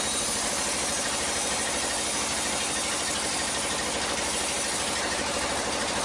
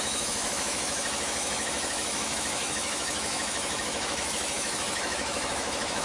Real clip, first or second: first